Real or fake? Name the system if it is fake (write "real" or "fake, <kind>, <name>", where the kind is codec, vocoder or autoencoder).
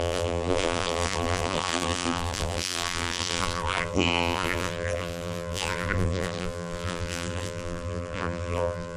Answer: fake, vocoder, BigVGAN v2